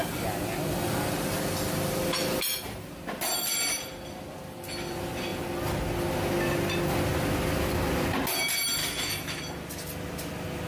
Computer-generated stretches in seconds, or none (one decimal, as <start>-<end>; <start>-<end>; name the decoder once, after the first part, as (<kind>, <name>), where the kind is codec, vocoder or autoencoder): 8.8-9.4 (autoencoder, DAC-VAE)